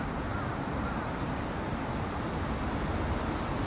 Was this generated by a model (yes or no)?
no